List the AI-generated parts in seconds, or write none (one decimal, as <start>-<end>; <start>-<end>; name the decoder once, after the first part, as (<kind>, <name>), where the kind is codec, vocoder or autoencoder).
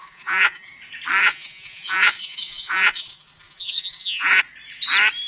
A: 0.0-0.7 (vocoder, Vocos); 1.2-4.4